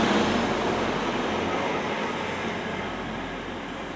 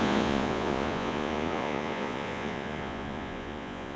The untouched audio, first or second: first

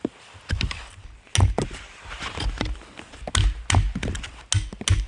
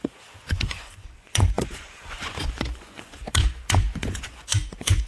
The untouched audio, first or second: first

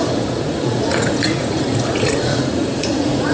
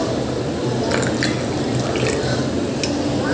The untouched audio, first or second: second